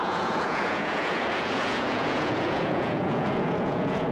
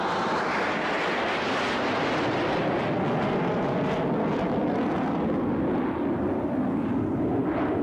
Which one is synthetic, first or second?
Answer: first